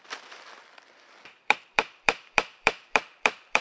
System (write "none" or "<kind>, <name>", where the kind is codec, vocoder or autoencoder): vocoder, BigVGAN v2